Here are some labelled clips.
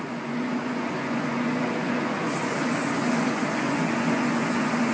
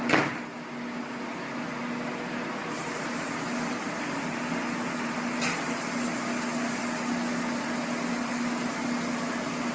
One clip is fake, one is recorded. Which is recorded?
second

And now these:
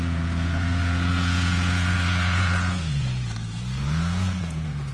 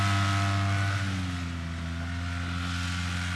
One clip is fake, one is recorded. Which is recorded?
second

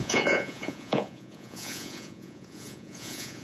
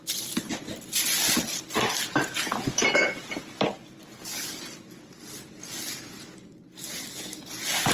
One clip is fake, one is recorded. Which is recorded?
second